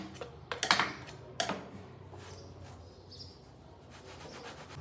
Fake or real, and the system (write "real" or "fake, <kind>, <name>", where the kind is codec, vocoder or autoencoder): real